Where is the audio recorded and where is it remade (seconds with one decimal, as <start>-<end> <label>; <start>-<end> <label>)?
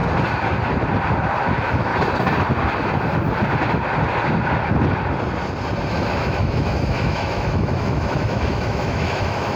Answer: 0.0-1.5 recorded; 1.5-1.9 remade; 1.9-5.9 recorded; 5.9-9.6 remade